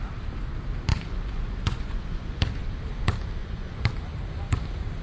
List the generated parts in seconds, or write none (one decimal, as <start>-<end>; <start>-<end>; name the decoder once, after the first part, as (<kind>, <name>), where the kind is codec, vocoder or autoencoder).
0.9-2.4 (vocoder, Vocos); 3.4-3.9